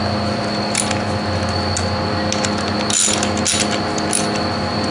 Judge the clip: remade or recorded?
recorded